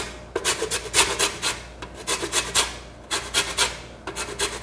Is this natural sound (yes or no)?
yes